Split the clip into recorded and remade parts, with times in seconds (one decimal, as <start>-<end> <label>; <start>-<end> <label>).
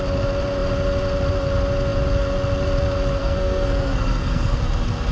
0.0-3.2 recorded; 3.2-4.6 remade; 4.6-5.1 recorded